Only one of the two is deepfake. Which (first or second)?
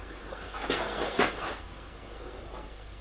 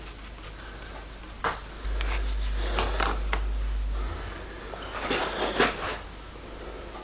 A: first